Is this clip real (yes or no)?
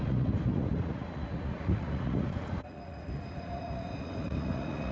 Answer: no